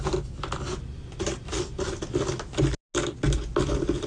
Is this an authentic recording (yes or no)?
yes